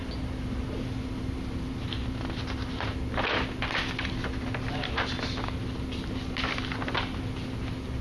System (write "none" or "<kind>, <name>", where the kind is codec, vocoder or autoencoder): none